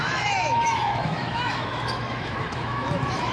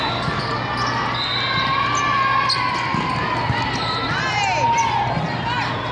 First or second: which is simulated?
first